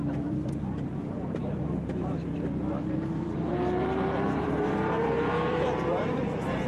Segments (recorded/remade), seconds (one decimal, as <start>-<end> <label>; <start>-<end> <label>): 0.0-6.7 remade